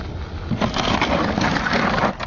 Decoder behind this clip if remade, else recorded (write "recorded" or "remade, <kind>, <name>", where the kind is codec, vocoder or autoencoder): recorded